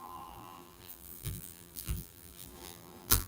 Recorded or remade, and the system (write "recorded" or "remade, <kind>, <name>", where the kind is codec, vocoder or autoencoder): remade, vocoder, BigVGAN v2